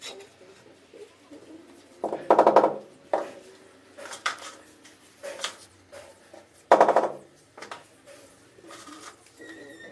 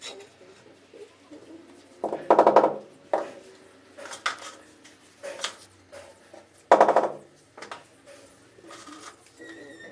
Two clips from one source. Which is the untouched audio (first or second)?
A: second